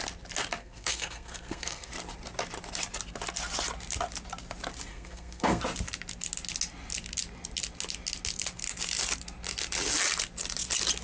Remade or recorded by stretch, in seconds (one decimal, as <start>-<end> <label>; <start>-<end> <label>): 0.0-0.6 recorded; 0.6-1.9 remade; 1.9-4.9 recorded; 4.9-5.6 remade; 5.6-11.0 recorded